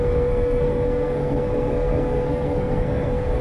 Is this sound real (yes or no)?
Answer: no